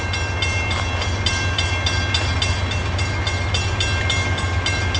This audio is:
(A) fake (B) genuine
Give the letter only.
B